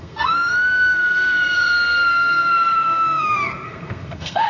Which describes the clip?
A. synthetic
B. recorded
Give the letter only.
A